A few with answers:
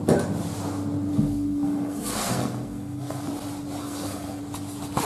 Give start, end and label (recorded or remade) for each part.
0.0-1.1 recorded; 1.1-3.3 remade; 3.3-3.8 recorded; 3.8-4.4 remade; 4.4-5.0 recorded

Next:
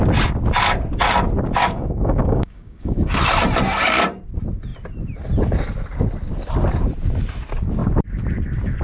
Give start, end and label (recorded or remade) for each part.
0.0-1.6 recorded; 1.6-3.2 remade; 3.2-8.8 recorded

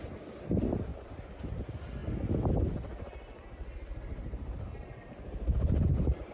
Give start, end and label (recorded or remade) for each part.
0.0-0.9 recorded; 0.9-1.6 remade; 1.6-6.3 recorded

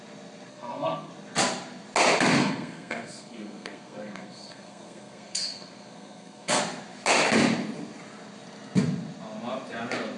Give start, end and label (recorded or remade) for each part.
0.0-0.5 recorded; 0.5-1.1 remade; 1.1-2.4 recorded; 2.4-6.6 remade; 6.6-10.2 recorded

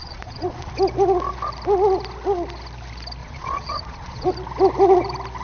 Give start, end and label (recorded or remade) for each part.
0.0-0.7 remade; 0.7-3.2 recorded; 3.2-4.3 remade; 4.3-5.4 recorded

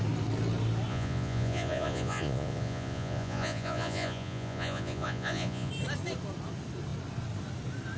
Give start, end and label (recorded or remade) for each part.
0.0-0.9 recorded; 0.9-5.7 remade; 5.7-8.0 recorded

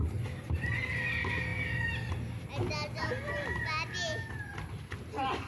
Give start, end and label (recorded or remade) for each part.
0.0-5.5 recorded

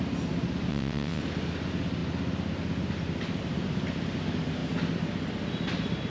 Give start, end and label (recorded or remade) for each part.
0.0-0.7 recorded; 0.7-1.2 remade; 1.2-6.1 recorded